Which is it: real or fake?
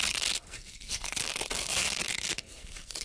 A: fake